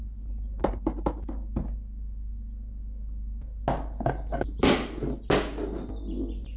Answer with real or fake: real